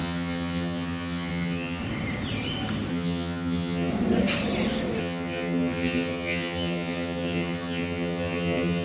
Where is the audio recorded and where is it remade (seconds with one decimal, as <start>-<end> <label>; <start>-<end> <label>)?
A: 0.0-1.8 remade; 1.8-2.9 recorded; 2.9-3.9 remade; 3.9-5.0 recorded; 5.0-8.8 remade